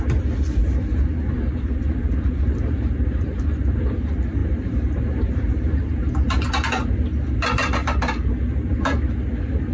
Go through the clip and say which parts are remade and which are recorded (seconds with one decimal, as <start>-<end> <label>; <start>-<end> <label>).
0.0-0.6 recorded; 0.6-3.8 remade; 3.8-4.4 recorded; 4.4-6.1 remade; 6.1-9.7 recorded